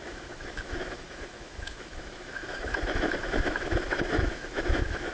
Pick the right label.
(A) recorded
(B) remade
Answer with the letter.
B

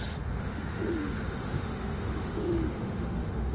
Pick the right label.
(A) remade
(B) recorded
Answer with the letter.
A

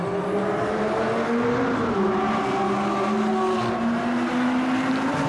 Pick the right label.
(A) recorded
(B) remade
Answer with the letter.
A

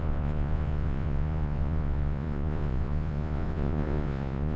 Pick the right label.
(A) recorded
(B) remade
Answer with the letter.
B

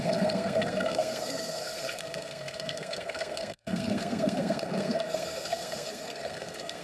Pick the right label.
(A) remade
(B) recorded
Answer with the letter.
A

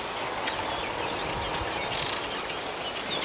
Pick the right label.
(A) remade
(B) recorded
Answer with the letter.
B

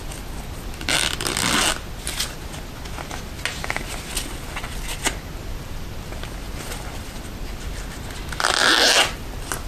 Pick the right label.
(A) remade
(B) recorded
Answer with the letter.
B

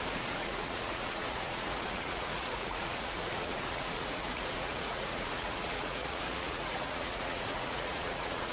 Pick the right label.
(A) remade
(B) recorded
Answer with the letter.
A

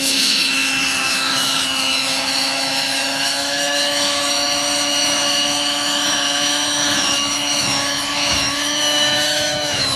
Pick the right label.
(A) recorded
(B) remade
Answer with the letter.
B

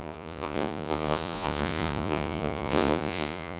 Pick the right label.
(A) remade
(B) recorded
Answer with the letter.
A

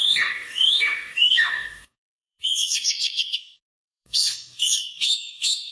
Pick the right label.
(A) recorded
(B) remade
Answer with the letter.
B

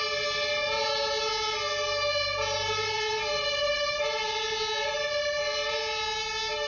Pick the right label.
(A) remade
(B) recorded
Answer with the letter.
B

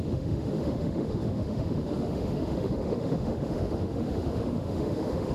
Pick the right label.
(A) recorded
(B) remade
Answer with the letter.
B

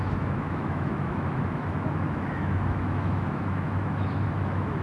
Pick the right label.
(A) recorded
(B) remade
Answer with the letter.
B